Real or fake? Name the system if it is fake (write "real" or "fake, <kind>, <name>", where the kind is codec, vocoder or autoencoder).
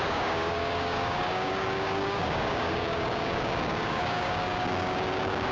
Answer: fake, codec, DAC